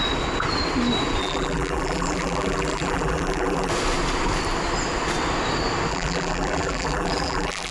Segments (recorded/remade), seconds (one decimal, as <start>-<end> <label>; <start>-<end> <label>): 0.0-1.2 recorded; 1.2-3.7 remade; 3.7-5.9 recorded; 5.9-7.7 remade